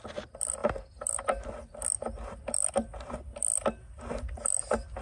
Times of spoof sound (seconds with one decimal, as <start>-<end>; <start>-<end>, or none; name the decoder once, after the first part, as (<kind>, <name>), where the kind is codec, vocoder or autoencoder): none